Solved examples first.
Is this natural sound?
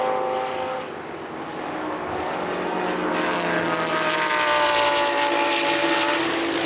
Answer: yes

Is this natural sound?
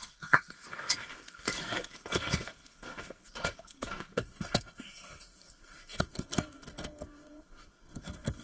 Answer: no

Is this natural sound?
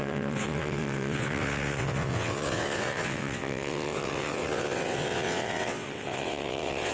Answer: no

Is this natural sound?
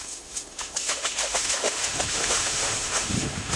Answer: no